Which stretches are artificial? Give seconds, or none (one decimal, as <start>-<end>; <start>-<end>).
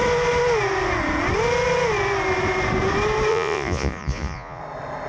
3.3-4.6